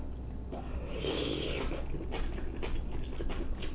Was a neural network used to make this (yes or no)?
no